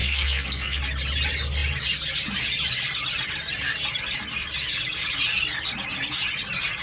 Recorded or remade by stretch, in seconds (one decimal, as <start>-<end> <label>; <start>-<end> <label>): 0.0-0.8 remade; 0.8-6.8 recorded